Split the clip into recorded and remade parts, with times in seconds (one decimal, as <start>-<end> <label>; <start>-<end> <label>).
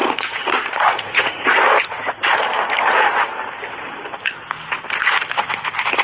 0.0-1.6 remade; 1.6-6.0 recorded